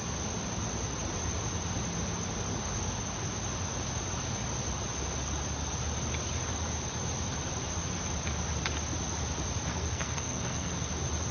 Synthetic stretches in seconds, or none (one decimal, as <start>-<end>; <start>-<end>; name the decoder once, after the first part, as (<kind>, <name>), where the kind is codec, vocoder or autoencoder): 9.7-10.9 (codec, SNAC)